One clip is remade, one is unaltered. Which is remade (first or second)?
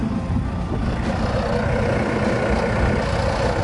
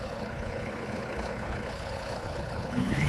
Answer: second